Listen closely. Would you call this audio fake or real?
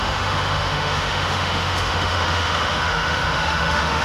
fake